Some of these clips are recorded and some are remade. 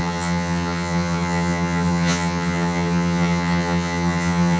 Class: remade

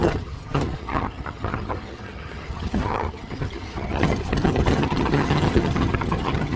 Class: remade